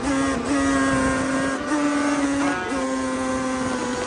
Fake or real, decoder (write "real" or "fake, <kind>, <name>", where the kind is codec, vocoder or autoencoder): real